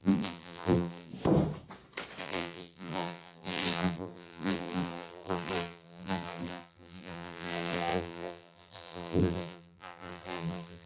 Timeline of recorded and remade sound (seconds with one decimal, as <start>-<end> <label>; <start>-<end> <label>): 0.0-1.1 remade; 1.1-2.2 recorded; 2.2-10.9 remade